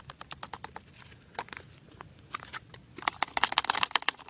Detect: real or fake real